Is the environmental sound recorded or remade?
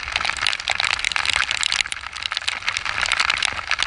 recorded